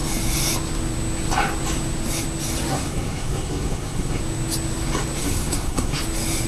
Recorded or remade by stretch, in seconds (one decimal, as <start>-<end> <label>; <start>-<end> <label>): 0.0-2.7 recorded; 2.7-4.2 remade; 4.2-5.2 recorded; 5.2-6.0 remade; 6.0-6.5 recorded